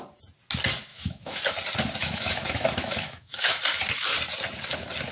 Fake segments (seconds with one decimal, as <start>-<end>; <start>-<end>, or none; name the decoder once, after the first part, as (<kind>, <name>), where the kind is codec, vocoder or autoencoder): 0.9-1.4 (autoencoder, DAC-VAE); 2.0-3.6